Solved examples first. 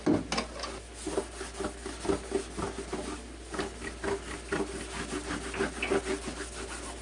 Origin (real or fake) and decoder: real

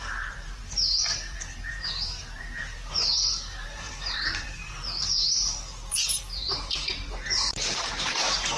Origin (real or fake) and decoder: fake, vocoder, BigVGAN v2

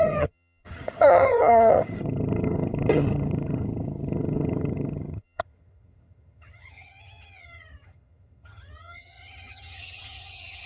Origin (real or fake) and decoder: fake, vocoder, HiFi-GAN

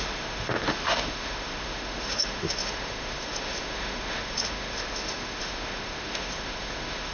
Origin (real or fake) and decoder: fake, autoencoder, DAC-VAE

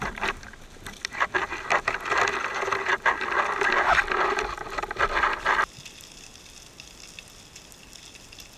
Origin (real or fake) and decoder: real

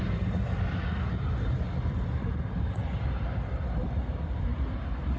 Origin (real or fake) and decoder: real